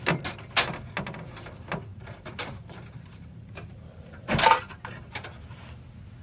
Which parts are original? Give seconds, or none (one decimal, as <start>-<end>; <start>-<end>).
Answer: 0.0-1.9; 5.6-6.2